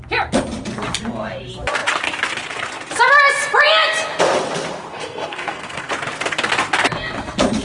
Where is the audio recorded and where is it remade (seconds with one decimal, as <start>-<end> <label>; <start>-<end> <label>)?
0.0-4.9 recorded; 4.9-5.9 remade; 5.9-7.6 recorded